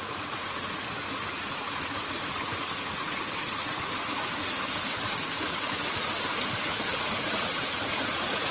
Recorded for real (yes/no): no